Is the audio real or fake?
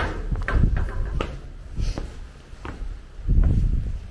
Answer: real